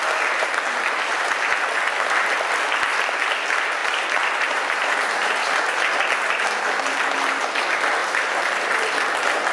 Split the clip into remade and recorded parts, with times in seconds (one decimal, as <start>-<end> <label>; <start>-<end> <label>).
0.0-3.8 recorded; 3.8-5.4 remade; 5.4-8.0 recorded; 8.0-8.8 remade; 8.8-9.5 recorded